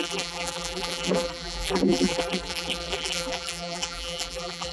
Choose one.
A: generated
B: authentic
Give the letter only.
A